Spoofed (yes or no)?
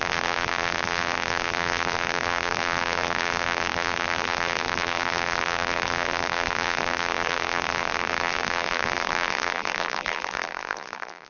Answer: yes